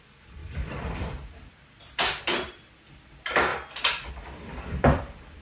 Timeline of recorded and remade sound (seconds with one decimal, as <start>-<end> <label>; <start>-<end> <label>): 0.0-3.5 remade; 3.5-4.1 recorded; 4.1-5.4 remade